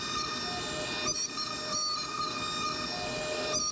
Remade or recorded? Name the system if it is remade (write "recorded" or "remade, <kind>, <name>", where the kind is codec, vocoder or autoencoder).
recorded